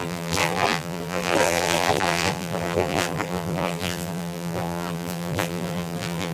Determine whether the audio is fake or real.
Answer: fake